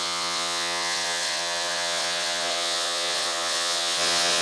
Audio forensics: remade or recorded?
remade